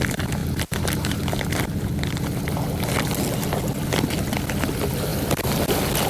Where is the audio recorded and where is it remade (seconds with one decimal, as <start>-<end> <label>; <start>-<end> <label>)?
0.0-5.1 recorded; 5.1-6.1 remade